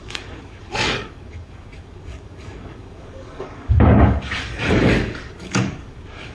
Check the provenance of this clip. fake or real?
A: fake